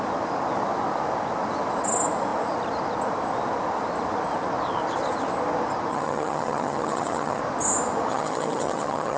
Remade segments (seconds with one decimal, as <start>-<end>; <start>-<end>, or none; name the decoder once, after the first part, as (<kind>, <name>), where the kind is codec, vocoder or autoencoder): 5.9-7.4 (vocoder, HiFi-GAN); 8.1-9.2